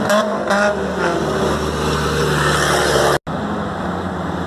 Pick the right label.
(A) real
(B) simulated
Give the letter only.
A